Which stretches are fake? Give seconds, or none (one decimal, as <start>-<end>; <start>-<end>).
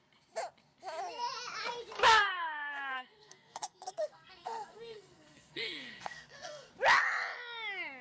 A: 2.1-6.7